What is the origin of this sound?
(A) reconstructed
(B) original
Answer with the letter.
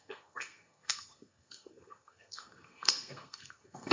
A